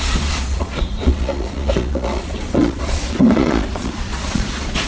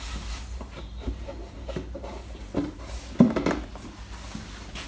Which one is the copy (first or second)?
first